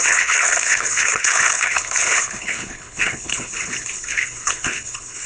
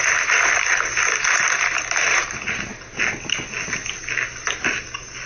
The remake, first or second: first